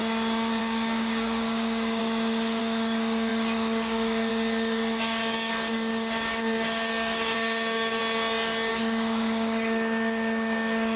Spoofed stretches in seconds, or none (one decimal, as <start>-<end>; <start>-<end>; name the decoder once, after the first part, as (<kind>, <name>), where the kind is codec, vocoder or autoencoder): 0.6-2.0 (codec, DAC); 2.6-8.0; 8.7-11.0